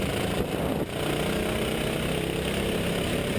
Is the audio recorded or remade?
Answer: recorded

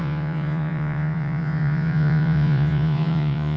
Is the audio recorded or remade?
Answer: remade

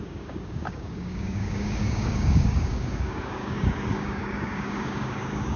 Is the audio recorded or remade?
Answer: remade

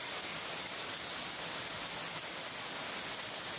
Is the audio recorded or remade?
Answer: recorded